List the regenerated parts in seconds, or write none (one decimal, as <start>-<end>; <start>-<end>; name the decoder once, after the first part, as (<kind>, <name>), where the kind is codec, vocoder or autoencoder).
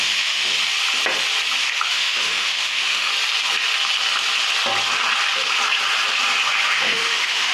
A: 0.0-0.5 (autoencoder, DAC-VAE); 1.8-3.1; 6.8-7.5